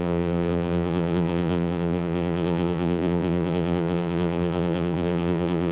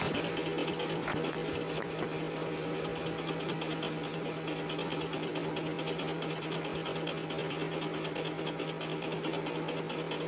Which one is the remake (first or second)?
first